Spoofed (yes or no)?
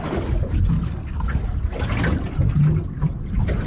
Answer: no